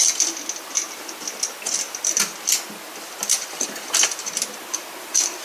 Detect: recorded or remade recorded